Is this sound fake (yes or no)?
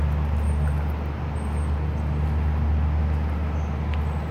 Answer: no